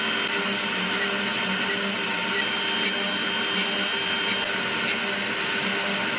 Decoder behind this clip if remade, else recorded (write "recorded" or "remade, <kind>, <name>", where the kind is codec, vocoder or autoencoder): recorded